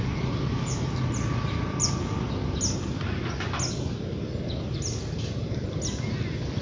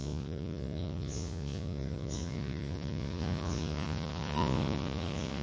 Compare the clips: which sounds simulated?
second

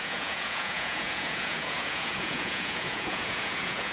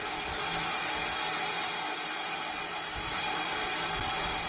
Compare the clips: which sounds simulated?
first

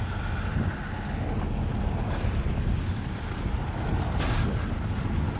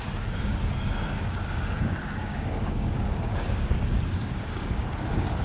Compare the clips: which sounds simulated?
second